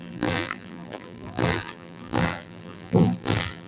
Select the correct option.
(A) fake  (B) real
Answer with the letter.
A